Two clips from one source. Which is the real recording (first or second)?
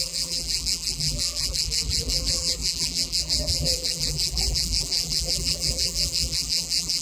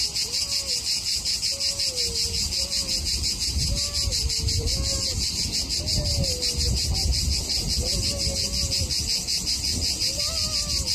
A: second